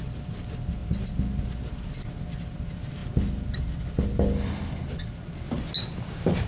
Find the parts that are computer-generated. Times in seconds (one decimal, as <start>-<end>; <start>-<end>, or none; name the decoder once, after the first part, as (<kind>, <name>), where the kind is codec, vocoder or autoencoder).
none